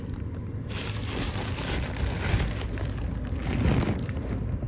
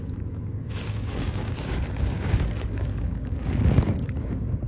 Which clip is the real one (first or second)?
first